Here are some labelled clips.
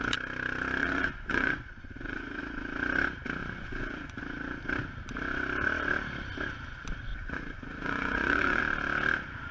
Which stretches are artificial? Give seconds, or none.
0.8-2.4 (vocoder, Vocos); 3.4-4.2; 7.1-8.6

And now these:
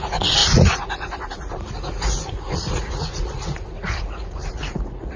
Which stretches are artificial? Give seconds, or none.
0.0-5.2 (vocoder, Vocos)

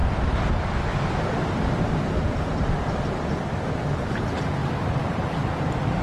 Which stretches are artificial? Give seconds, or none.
none

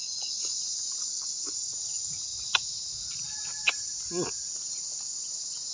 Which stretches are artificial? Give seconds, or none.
0.0-0.6 (codec, DAC); 1.0-1.7

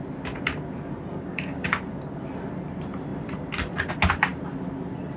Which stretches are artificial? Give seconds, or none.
1.1-1.8 (codec, DAC)

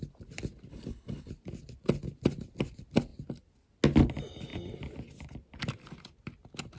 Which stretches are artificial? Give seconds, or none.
0.7-1.3 (codec, HILCodec)

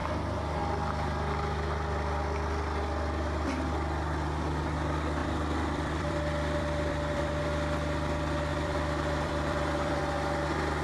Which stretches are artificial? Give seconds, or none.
5.2-7.4 (vocoder, BigVGAN v2); 8.5-10.0